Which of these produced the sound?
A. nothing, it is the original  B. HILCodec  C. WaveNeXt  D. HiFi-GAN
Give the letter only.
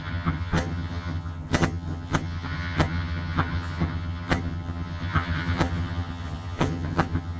D